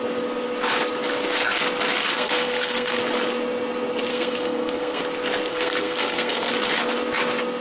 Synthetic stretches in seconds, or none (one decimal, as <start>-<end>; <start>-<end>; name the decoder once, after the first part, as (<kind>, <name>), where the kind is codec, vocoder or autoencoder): 2.1-3.0 (codec, SNAC); 4.1-5.0; 5.5-6.5